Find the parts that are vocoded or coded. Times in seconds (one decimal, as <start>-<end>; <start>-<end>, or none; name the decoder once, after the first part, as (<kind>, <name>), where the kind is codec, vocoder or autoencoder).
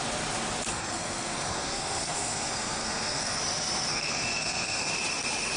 0.7-3.4 (codec, SNAC); 3.9-4.9